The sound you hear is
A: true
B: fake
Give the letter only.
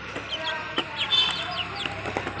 A